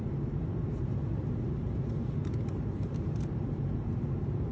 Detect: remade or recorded remade